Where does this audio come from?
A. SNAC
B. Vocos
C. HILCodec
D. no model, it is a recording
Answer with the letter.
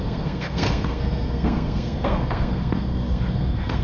A